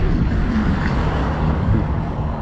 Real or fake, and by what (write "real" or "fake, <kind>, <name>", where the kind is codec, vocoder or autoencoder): fake, codec, DAC